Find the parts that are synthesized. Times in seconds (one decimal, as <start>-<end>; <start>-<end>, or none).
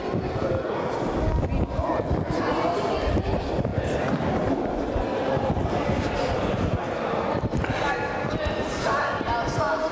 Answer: none